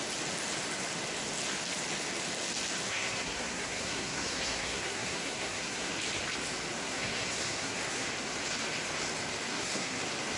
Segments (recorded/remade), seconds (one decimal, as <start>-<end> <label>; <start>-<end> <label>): 0.0-2.9 recorded; 2.9-5.9 remade; 5.9-6.8 recorded; 6.8-8.1 remade; 8.1-9.5 recorded; 9.5-10.0 remade; 10.0-10.4 recorded